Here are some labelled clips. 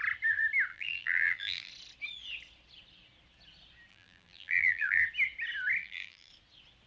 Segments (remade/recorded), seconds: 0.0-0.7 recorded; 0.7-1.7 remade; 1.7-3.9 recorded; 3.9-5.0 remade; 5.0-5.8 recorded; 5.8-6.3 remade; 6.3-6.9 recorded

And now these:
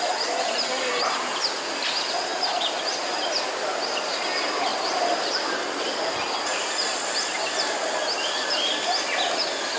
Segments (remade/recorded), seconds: 0.0-2.3 recorded; 2.3-2.8 remade; 2.8-4.7 recorded; 4.7-5.8 remade; 5.8-6.5 recorded; 6.5-9.3 remade; 9.3-9.8 recorded

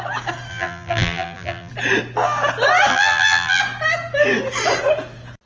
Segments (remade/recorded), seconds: 0.0-0.5 recorded; 0.5-1.7 remade; 1.7-2.9 recorded; 2.9-3.6 remade; 3.6-5.5 recorded